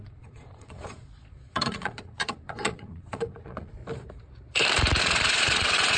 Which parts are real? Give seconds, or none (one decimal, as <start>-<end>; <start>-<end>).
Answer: 3.8-5.0